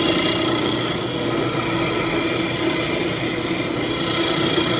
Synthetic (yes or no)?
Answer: no